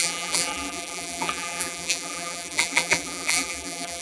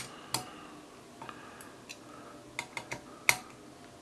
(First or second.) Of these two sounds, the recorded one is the second